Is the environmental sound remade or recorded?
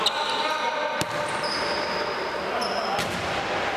recorded